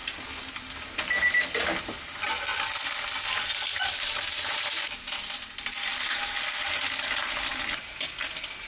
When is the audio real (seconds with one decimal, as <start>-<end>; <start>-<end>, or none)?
0.0-8.7